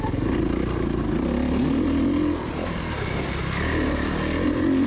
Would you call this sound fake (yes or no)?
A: no